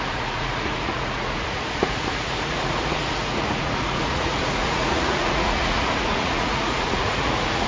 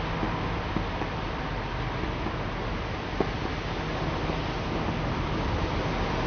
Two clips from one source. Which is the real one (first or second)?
second